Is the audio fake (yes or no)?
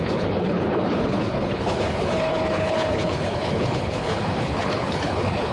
yes